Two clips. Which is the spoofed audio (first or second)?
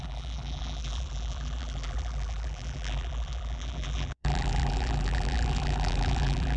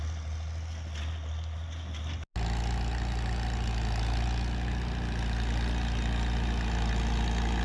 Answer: first